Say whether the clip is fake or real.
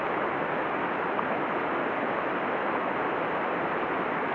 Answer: real